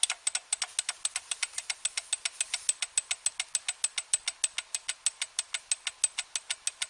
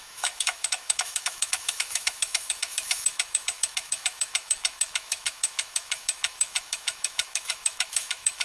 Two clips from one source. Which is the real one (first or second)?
first